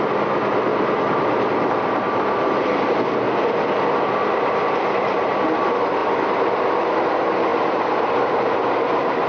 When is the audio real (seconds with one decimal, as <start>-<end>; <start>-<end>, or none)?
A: 0.0-7.5; 8.7-9.3